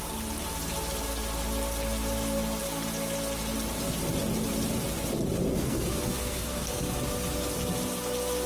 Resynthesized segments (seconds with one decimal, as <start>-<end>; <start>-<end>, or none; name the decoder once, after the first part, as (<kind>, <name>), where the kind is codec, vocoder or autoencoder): 5.5-6.9 (codec, SNAC)